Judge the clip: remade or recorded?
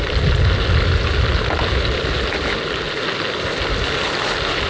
recorded